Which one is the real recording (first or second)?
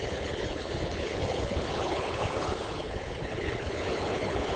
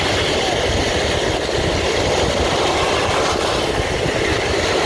second